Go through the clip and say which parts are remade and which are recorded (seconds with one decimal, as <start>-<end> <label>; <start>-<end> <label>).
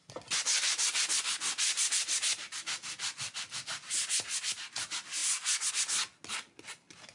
0.0-7.1 recorded